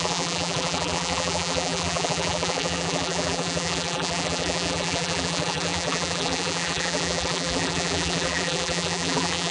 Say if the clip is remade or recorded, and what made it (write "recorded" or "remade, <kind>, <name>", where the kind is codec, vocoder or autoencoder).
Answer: remade, vocoder, BigVGAN v2